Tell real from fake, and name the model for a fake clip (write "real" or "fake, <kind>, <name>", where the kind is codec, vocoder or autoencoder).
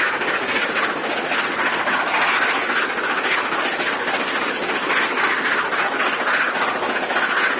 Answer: real